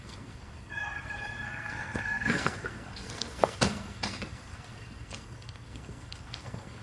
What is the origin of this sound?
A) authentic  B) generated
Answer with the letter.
B